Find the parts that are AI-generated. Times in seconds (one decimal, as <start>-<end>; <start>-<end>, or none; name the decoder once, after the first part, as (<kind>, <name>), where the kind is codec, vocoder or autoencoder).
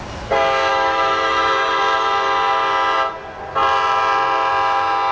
0.7-1.7 (autoencoder, DAC-VAE)